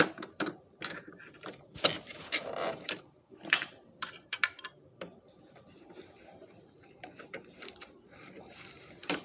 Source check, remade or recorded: remade